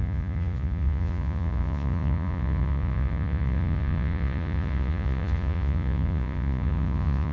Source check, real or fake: fake